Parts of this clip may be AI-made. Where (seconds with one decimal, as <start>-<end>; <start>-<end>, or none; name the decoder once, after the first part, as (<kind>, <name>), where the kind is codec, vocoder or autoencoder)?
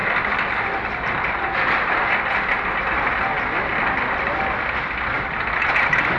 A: 0.0-1.4 (vocoder, BigVGAN v2); 5.1-5.8